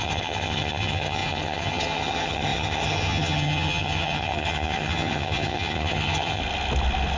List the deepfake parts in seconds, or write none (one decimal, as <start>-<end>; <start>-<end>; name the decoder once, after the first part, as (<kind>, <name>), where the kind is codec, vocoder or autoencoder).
0.0-6.4 (vocoder, HiFi-GAN)